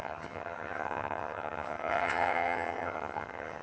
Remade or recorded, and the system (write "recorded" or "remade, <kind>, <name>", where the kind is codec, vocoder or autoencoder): remade, vocoder, HiFi-GAN